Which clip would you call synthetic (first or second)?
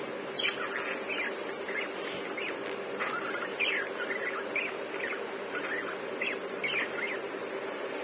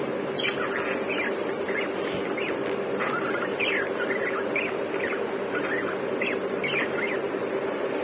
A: second